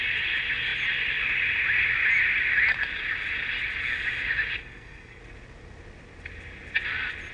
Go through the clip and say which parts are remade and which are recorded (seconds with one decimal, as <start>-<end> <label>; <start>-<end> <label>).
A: 0.0-4.6 recorded; 4.6-5.2 remade; 5.2-7.3 recorded